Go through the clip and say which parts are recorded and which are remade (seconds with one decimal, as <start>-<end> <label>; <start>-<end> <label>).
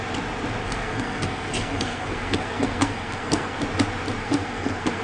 0.0-0.6 recorded; 0.6-3.6 remade; 3.6-4.2 recorded; 4.2-5.0 remade